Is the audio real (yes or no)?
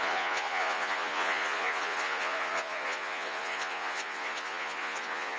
no